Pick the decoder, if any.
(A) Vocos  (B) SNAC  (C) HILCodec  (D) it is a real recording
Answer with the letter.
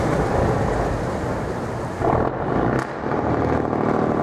D